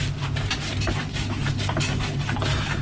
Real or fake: real